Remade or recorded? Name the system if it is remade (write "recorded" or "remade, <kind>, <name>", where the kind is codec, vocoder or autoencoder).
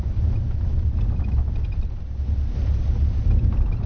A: recorded